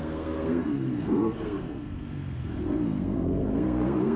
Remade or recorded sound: remade